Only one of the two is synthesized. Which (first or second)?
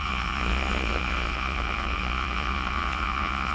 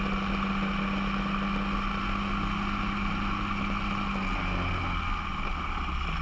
first